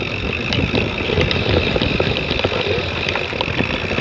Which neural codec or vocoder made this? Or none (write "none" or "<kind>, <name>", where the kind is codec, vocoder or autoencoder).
none